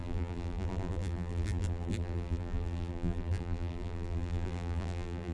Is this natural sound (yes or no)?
no